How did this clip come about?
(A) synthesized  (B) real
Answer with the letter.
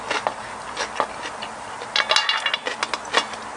B